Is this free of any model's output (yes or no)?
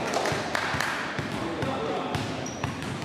yes